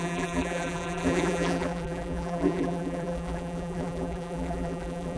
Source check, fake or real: fake